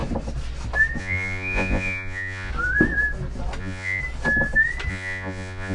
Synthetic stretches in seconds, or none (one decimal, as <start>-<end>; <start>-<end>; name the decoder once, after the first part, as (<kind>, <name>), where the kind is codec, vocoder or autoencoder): 1.0-2.5 (vocoder, Vocos); 3.6-4.0; 4.9-5.7